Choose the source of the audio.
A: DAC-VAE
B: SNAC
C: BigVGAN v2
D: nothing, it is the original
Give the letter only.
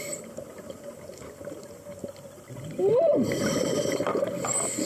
D